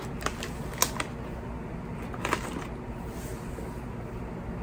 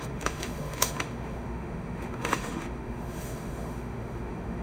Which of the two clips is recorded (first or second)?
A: first